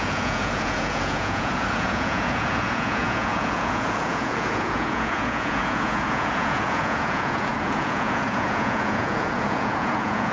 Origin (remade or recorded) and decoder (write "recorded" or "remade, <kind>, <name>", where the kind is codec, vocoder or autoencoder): remade, vocoder, Vocos